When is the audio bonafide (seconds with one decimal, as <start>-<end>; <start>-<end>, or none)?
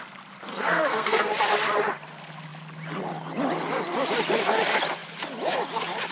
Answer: 0.0-0.5; 1.3-6.1